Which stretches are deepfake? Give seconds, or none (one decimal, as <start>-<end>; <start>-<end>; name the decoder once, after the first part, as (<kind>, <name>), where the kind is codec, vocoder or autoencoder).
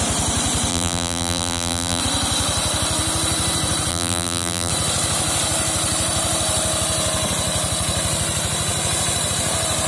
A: 0.7-2.0 (vocoder, BigVGAN v2); 3.9-4.7